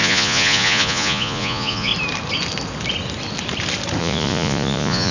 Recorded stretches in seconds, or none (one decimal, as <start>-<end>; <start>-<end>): 1.9-4.0